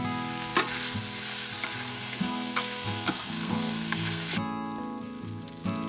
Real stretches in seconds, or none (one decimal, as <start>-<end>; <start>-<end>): 0.0-1.9; 4.3-5.9